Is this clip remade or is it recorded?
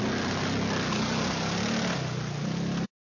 recorded